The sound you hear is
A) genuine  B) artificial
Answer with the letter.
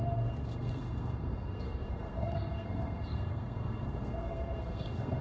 B